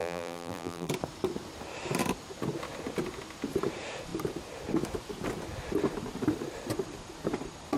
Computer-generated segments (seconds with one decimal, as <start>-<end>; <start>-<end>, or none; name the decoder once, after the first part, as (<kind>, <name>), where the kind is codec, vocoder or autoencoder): 0.0-0.9 (vocoder, BigVGAN v2)